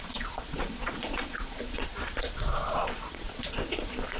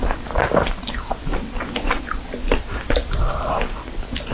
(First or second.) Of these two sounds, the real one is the second